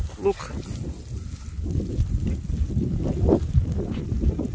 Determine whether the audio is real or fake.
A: real